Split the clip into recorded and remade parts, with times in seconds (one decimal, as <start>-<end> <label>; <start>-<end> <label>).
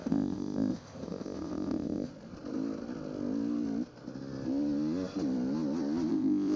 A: 0.0-2.1 remade; 2.1-6.1 recorded; 6.1-6.6 remade